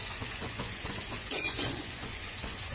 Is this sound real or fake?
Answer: fake